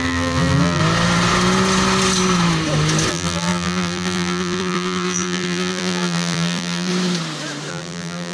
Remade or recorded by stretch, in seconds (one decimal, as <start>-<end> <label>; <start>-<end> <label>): 0.0-0.8 remade; 0.8-3.1 recorded; 3.1-6.9 remade; 6.9-7.7 recorded; 7.7-8.3 remade